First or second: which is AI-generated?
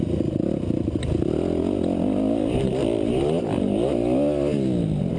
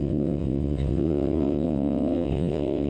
second